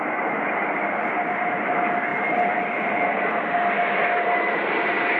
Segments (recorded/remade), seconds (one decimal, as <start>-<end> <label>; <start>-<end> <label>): 0.0-5.2 recorded